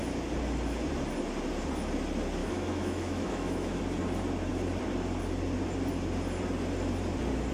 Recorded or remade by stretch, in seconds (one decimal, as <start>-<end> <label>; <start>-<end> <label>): 0.0-2.4 recorded; 2.4-3.8 remade; 3.8-7.5 recorded